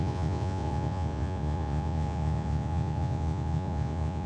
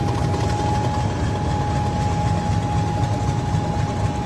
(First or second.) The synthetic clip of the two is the first